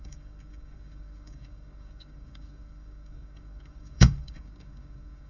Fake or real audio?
fake